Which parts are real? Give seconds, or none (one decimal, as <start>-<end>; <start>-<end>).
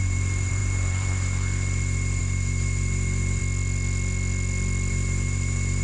3.4-4.9